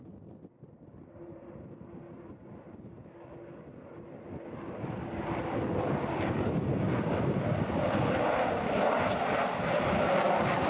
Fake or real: real